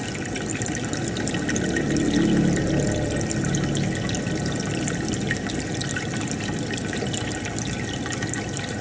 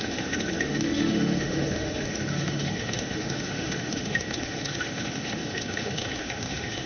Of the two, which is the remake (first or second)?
second